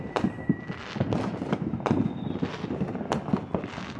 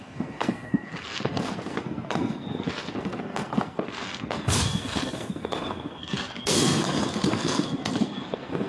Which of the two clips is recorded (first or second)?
first